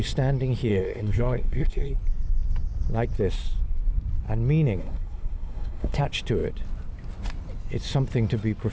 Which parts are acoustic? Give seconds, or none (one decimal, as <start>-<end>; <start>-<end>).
0.0-0.7; 1.9-4.8; 6.0-8.7